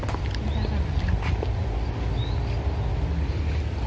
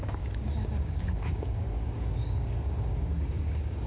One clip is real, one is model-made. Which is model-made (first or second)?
second